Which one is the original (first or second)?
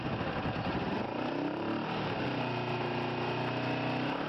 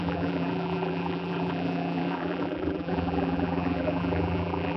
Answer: first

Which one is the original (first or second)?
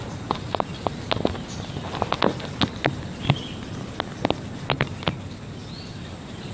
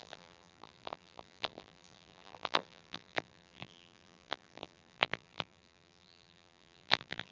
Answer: first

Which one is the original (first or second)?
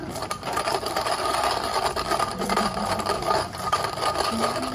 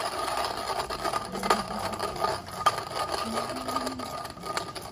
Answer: second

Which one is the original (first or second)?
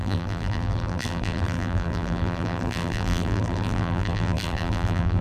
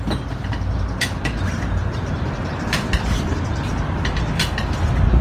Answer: second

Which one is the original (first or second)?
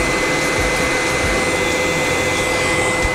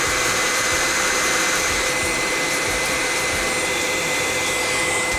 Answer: first